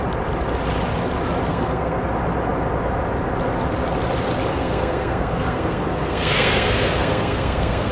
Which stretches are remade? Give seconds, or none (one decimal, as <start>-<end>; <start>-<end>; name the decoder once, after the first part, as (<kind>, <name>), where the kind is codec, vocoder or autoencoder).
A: 1.5-2.0 (codec, SNAC); 4.5-7.9